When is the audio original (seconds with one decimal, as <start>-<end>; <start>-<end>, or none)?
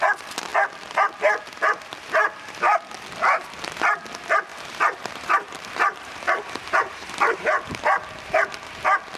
0.0-4.5; 7.8-9.2